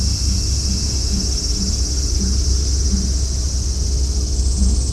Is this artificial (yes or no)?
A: no